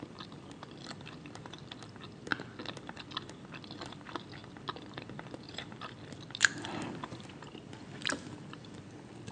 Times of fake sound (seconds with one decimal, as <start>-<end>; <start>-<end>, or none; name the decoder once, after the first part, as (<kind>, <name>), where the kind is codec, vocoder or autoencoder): 0.0-2.3 (vocoder, BigVGAN v2); 3.6-9.3